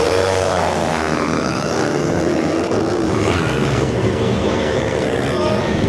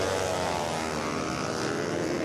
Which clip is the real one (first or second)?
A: second